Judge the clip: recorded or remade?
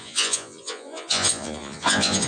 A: remade